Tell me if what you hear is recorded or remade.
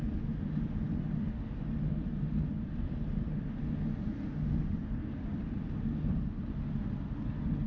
recorded